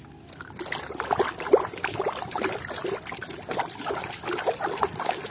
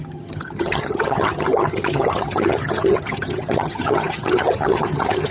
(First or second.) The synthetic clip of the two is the second